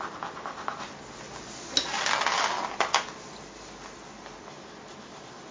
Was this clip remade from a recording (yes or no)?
no